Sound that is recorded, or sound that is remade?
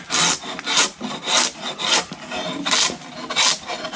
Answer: recorded